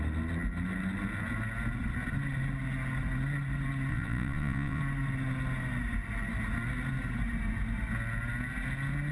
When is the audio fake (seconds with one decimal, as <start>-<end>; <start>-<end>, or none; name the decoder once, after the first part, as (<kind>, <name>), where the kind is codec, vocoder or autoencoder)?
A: 3.9-4.8 (vocoder, Vocos)